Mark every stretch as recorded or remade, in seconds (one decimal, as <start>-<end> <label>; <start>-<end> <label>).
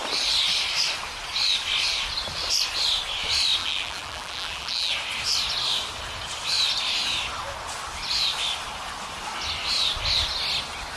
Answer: 0.0-3.6 recorded; 3.6-4.9 remade; 4.9-11.0 recorded